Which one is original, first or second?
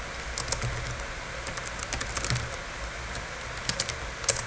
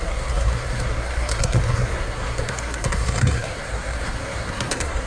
first